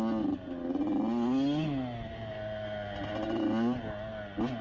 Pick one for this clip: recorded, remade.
recorded